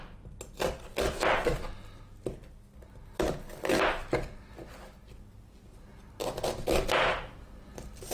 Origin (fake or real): real